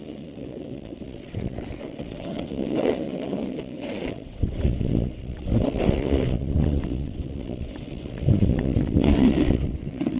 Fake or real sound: fake